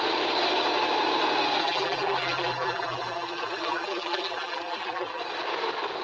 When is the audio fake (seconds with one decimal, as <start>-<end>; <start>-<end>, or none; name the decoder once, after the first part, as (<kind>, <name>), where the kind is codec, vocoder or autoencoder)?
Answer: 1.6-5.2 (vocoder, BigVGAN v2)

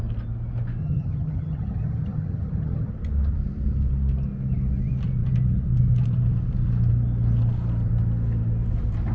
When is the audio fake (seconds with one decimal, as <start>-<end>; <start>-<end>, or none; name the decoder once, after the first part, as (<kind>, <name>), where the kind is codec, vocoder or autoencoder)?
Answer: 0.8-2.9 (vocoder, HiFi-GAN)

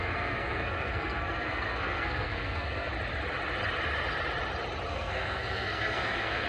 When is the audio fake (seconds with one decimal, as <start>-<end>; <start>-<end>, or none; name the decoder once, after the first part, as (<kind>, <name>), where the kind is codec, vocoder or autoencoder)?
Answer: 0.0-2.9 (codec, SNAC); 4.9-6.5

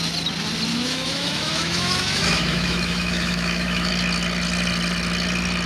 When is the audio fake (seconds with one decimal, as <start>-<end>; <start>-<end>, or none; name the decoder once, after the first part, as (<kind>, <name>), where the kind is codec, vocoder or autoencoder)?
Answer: 0.7-3.9 (autoencoder, DAC-VAE)

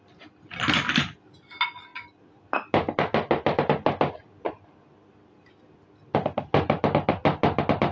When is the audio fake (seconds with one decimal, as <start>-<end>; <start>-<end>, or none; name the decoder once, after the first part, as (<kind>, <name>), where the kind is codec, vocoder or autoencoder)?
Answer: none

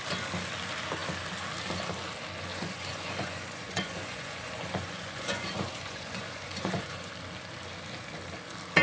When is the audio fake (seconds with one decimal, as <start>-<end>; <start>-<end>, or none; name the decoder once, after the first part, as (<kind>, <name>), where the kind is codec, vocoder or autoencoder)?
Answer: 2.5-7.1 (vocoder, Vocos)

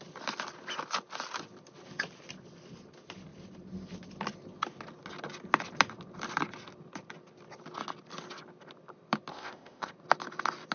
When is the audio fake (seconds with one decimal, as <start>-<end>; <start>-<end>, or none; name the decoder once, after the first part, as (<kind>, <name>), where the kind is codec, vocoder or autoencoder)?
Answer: 9.3-9.9 (codec, ZipCodec)

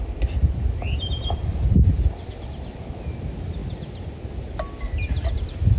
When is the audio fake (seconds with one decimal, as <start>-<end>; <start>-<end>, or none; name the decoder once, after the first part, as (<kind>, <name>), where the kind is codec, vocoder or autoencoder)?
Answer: 1.2-2.9 (vocoder, BigVGAN v2)